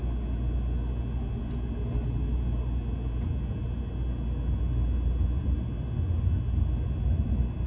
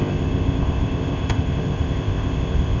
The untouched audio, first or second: first